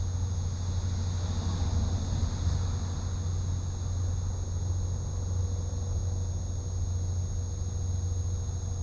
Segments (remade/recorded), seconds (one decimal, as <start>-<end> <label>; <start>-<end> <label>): 0.0-8.8 recorded